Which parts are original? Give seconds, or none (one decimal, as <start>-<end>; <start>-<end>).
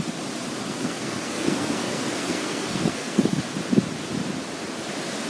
0.0-0.6; 3.4-5.3